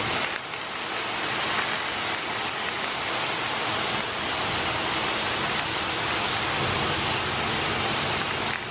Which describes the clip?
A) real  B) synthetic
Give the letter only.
A